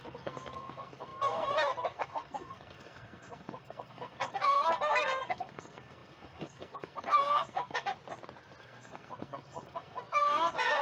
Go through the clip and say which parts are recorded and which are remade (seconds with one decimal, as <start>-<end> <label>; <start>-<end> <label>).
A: 0.0-7.9 remade; 7.9-8.6 recorded; 8.6-10.8 remade